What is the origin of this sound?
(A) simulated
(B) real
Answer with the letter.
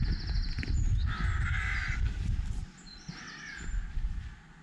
B